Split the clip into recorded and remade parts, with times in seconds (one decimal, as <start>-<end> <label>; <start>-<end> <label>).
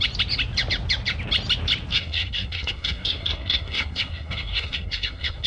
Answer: 0.0-1.9 recorded; 1.9-5.5 remade